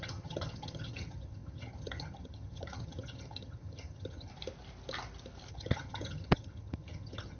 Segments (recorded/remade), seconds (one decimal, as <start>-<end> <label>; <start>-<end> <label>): 0.0-4.3 remade; 4.3-5.5 recorded; 5.5-7.4 remade